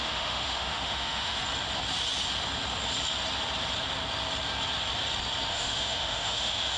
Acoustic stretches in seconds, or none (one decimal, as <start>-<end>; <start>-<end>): 1.4-5.5